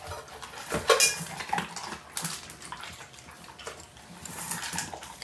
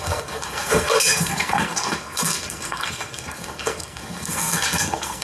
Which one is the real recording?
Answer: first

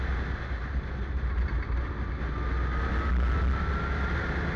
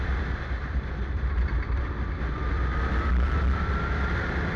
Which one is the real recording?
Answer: first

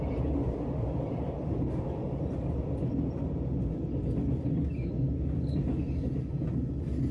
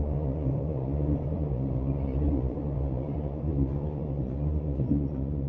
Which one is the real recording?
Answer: first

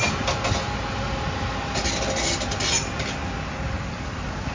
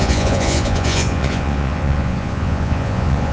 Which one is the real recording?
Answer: first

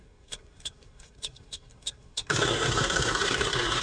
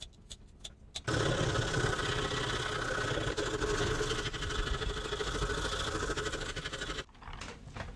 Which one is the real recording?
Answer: second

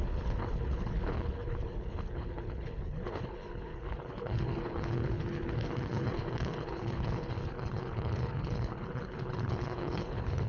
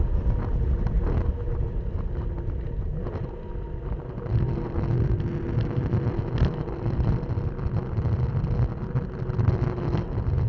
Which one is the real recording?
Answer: second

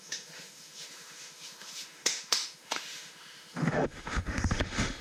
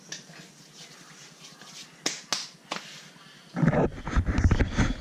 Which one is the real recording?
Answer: second